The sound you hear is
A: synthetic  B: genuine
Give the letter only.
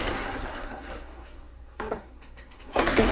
A